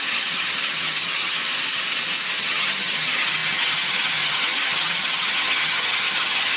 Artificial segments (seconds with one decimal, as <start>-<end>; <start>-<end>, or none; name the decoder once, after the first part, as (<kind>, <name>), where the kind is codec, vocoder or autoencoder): 0.0-1.4 (vocoder, HiFi-GAN); 2.4-6.6